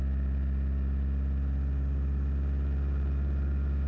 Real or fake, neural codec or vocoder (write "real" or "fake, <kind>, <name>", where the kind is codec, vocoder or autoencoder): real